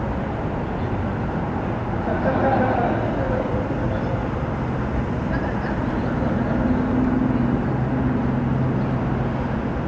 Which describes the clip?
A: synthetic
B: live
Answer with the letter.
B